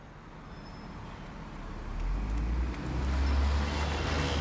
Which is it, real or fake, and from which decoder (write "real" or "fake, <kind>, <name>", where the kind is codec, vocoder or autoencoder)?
real